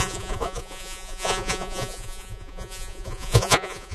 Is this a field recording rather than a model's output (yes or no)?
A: no